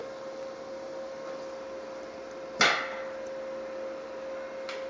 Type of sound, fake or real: real